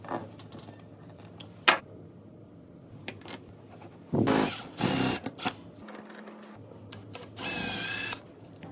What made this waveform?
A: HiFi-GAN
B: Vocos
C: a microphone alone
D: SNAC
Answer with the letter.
C